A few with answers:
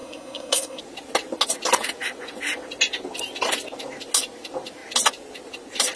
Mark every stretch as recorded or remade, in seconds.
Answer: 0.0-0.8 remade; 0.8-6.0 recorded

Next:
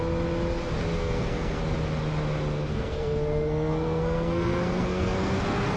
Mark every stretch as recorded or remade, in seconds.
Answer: 0.0-1.0 recorded; 1.0-1.6 remade; 1.6-2.7 recorded; 2.7-5.8 remade